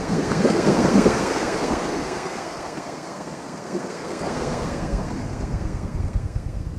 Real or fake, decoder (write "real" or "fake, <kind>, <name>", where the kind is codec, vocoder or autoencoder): fake, codec, SNAC